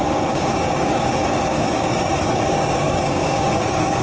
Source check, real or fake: fake